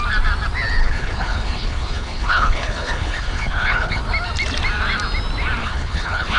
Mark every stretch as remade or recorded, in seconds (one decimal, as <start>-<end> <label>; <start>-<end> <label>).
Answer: 0.0-0.8 recorded; 0.8-4.0 remade; 4.0-5.6 recorded; 5.6-6.4 remade